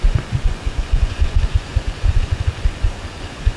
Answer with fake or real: fake